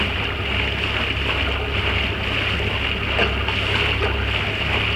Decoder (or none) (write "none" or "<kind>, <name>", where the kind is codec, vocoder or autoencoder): none